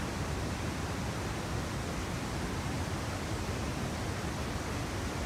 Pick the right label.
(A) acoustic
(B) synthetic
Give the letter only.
A